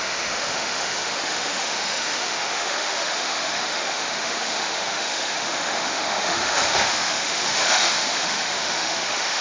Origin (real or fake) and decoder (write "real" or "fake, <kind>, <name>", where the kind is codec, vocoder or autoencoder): fake, autoencoder, DAC-VAE